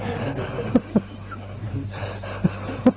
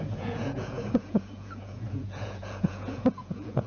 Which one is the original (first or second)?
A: first